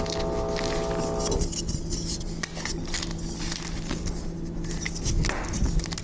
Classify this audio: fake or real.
real